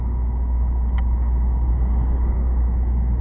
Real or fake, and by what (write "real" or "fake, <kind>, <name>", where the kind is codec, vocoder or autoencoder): real